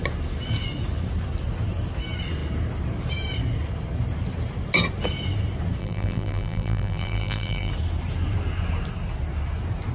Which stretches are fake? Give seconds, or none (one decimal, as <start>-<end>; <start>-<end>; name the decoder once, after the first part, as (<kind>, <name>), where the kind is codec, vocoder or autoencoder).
5.8-7.7 (vocoder, BigVGAN v2)